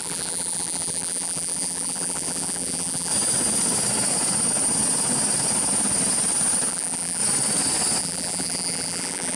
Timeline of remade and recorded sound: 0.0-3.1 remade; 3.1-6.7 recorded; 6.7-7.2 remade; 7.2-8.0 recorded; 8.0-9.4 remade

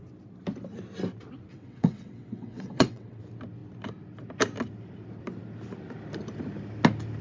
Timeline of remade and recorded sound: 0.0-1.5 recorded; 1.5-3.2 remade; 3.2-7.2 recorded

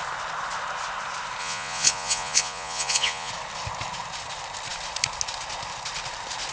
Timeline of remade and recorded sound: 0.0-1.4 recorded; 1.4-3.3 remade; 3.3-6.5 recorded

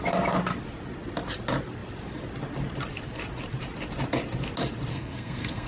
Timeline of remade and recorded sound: 0.0-4.9 recorded; 4.9-5.7 remade

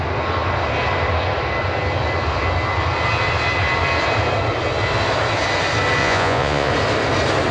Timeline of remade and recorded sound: 0.0-6.0 recorded; 6.0-6.7 remade; 6.7-7.5 recorded

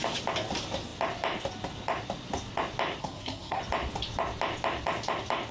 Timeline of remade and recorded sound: 0.0-3.0 recorded; 3.0-3.6 remade; 3.6-5.5 recorded

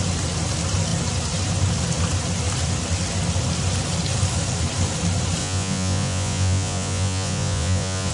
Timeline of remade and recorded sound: 0.0-5.4 recorded; 5.4-8.1 remade